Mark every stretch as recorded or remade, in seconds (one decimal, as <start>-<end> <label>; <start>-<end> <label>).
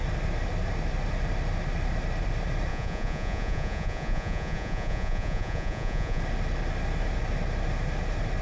0.0-2.7 recorded; 2.7-6.2 remade; 6.2-8.4 recorded